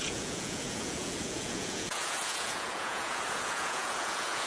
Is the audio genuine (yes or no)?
no